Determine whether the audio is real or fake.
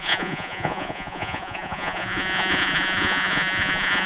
fake